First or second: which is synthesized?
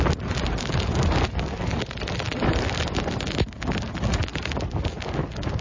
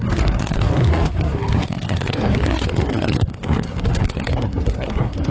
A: second